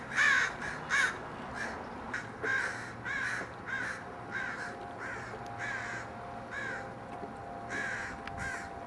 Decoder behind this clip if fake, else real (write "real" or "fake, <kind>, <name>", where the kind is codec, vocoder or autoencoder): real